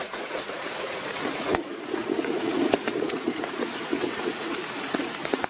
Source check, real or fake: fake